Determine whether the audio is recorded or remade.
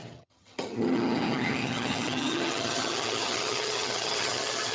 remade